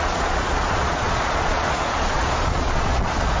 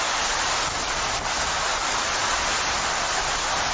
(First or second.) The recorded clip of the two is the second